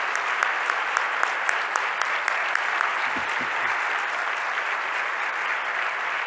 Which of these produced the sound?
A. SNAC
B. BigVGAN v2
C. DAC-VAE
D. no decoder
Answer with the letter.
D